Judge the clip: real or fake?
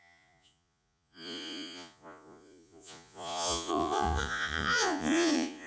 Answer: fake